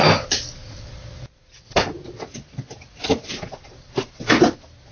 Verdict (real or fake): real